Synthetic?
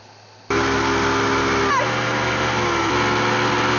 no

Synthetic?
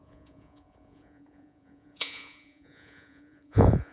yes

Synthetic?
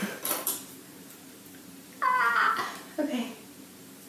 yes